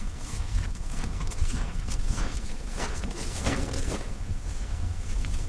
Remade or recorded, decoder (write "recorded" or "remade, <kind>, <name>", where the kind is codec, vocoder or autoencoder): remade, codec, SNAC